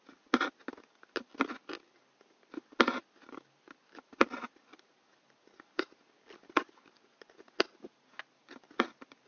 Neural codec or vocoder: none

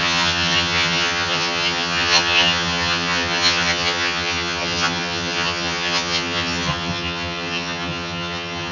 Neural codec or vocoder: vocoder, HiFi-GAN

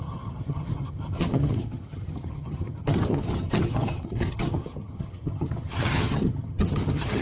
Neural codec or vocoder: vocoder, HiFi-GAN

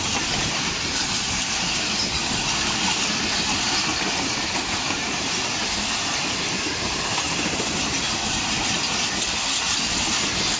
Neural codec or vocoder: none